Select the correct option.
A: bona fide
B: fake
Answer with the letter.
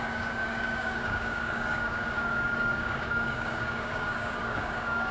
B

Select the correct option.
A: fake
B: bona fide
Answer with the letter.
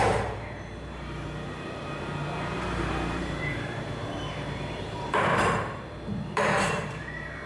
A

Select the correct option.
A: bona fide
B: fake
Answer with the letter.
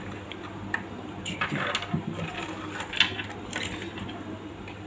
A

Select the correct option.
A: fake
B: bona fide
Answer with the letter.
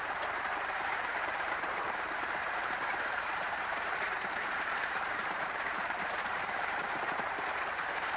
A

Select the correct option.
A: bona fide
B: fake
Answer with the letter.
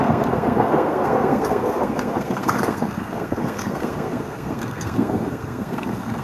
B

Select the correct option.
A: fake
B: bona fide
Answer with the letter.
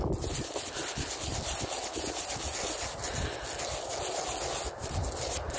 B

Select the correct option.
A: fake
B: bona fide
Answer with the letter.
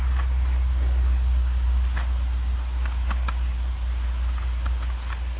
B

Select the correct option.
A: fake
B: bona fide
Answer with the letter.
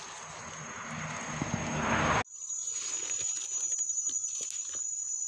B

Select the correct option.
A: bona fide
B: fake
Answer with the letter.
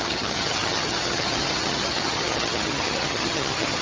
B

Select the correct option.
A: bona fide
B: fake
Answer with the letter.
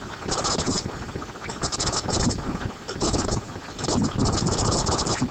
A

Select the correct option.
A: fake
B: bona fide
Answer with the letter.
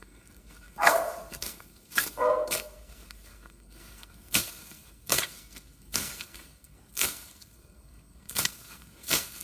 A